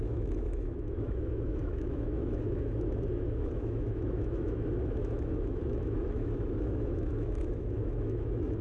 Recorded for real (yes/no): no